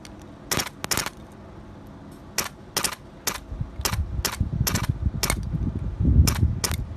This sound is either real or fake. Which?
real